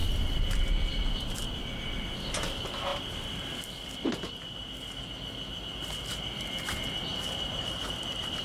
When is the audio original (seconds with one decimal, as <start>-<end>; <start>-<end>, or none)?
0.6-2.9; 4.5-7.1